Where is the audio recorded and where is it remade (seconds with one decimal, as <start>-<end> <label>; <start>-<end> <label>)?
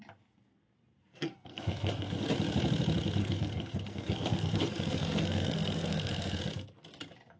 0.0-1.1 recorded; 1.1-2.2 remade; 2.2-3.2 recorded; 3.2-6.4 remade; 6.4-7.4 recorded